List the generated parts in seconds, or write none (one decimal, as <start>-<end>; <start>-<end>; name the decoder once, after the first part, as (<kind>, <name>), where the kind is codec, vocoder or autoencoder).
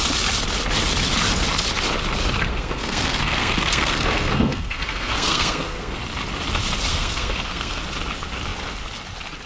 2.5-6.0 (codec, SNAC); 6.9-7.8